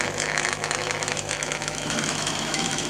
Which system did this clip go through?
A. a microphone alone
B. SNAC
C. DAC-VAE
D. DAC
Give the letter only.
C